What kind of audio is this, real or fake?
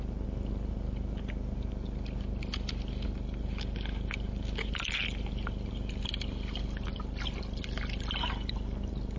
real